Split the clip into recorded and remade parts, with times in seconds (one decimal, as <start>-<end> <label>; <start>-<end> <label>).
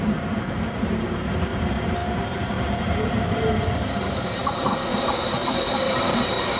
0.0-6.6 remade